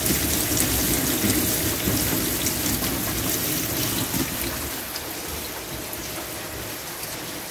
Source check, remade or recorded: recorded